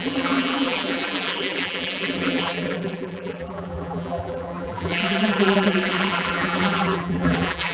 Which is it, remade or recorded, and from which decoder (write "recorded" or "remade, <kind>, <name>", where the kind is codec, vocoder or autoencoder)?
remade, vocoder, BigVGAN v2